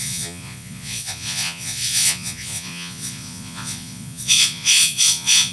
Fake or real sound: fake